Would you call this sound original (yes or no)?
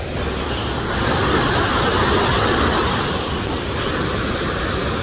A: yes